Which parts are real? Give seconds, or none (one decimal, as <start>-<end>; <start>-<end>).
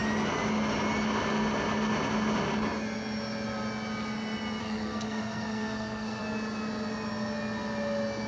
0.0-4.6; 6.2-8.3